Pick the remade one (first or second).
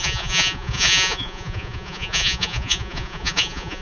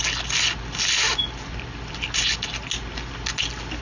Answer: first